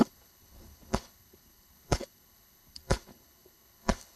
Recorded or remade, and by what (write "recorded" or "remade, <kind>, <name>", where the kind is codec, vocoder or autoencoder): remade, codec, HILCodec